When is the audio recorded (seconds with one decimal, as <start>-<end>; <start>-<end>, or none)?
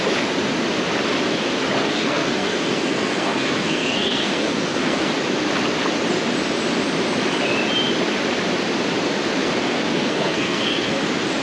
0.0-1.8; 5.1-9.4; 11.0-11.4